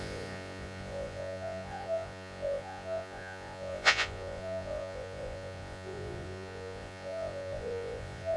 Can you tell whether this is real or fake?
fake